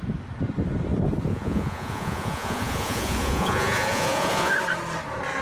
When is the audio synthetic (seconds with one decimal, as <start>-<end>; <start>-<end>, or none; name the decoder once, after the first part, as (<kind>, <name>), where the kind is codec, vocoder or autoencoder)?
1.3-4.5 (vocoder, Vocos)